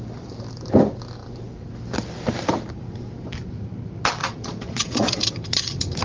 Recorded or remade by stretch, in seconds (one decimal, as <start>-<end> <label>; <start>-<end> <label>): 0.0-4.2 recorded; 4.2-5.2 remade; 5.2-6.0 recorded